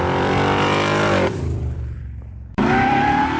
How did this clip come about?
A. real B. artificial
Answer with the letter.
B